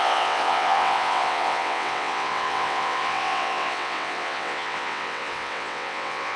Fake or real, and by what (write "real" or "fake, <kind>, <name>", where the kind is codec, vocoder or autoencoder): fake, vocoder, WaveNeXt